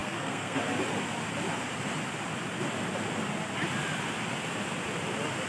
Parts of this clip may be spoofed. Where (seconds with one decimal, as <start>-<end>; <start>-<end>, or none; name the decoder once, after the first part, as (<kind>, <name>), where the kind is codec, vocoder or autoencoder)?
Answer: 0.0-0.6 (codec, SNAC)